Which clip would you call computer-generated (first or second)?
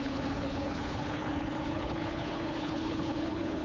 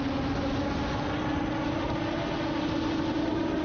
first